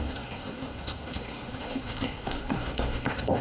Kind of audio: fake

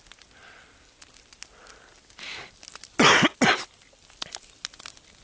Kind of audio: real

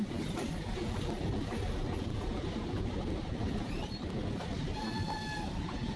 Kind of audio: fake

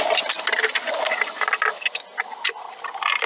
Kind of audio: real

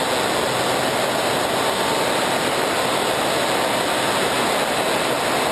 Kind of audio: real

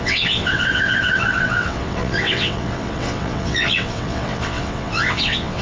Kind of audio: fake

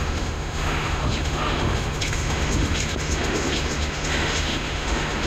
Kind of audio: fake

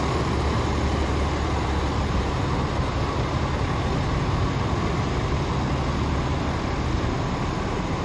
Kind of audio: real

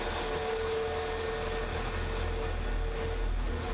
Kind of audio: real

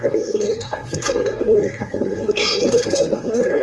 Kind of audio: fake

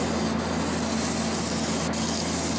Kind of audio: real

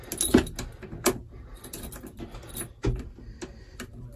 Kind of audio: real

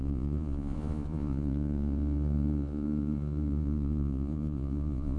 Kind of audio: fake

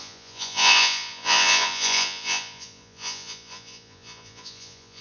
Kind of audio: fake